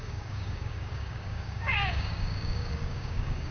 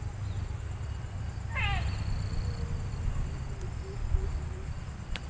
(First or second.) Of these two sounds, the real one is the second